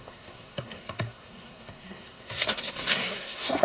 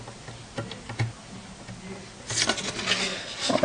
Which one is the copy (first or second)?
first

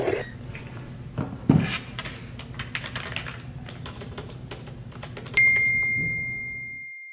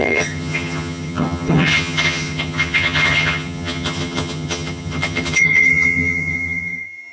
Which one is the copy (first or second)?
second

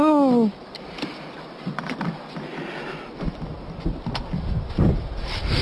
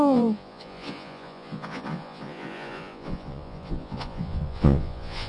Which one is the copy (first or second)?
second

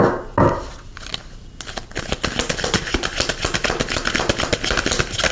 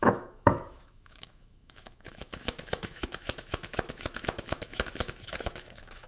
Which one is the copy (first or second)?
second